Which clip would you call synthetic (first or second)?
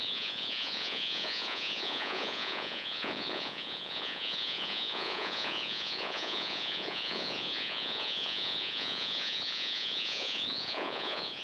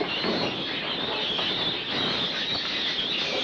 first